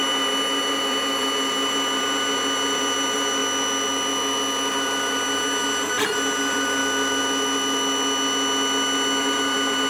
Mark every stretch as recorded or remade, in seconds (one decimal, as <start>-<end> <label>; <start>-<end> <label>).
0.0-3.4 remade; 3.4-4.7 recorded; 4.7-6.8 remade; 6.8-9.2 recorded; 9.2-9.9 remade